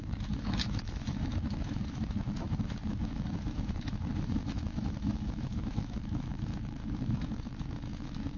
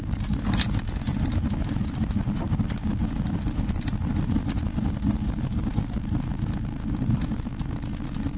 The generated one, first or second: first